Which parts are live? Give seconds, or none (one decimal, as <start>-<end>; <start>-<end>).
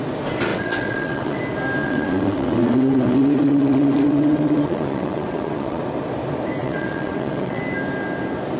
0.0-0.5; 1.4-1.8; 5.8-6.6; 7.6-8.6